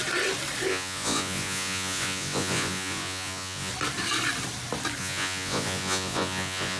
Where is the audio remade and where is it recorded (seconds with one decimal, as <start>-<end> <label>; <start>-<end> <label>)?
0.0-0.7 recorded; 0.7-3.7 remade; 3.7-5.0 recorded; 5.0-6.8 remade